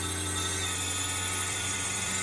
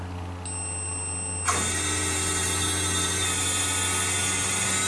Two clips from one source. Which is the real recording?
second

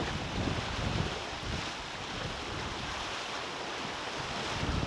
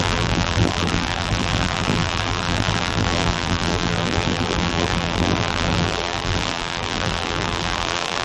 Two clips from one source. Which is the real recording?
first